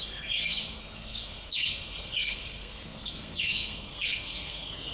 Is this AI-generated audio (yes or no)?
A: yes